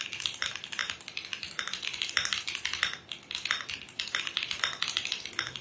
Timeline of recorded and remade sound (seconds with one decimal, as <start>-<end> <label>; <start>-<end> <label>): 0.0-0.8 remade; 0.8-4.2 recorded; 4.2-5.6 remade